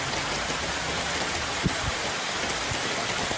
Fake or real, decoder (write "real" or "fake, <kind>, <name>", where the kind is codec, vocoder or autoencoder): real